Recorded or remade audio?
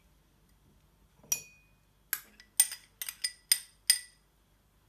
recorded